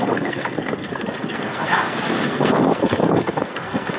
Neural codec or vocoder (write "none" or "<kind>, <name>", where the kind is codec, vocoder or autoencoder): codec, SNAC